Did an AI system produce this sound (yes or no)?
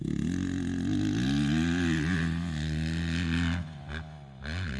no